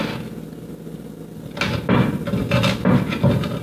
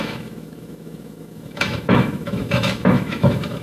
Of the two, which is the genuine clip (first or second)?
first